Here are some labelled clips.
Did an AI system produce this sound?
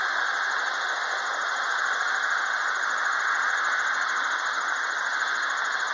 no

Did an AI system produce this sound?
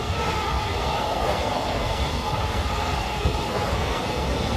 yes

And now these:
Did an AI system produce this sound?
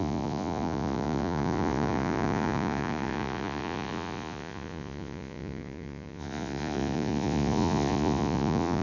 yes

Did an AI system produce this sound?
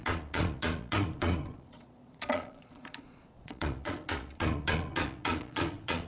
yes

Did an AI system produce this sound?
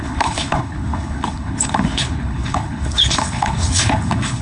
yes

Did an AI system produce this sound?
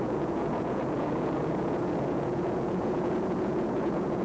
yes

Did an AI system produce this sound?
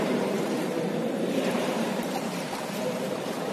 yes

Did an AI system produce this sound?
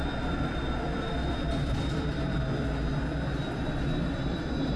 yes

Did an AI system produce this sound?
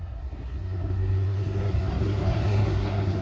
yes